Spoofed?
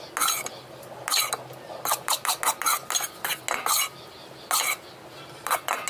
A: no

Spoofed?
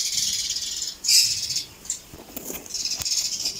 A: no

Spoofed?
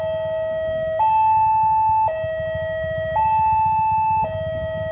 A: no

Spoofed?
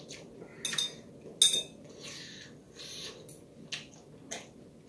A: no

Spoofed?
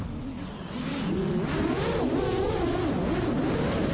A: no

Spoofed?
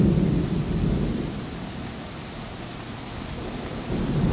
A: no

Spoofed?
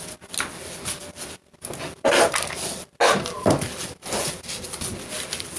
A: no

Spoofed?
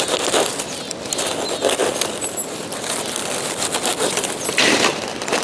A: no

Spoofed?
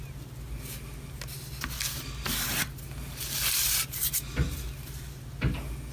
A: no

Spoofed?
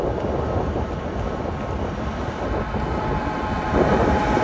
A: no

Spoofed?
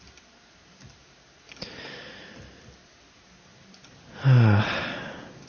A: no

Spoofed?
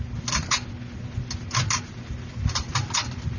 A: no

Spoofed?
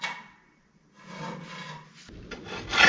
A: no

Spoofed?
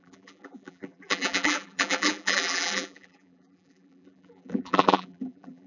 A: yes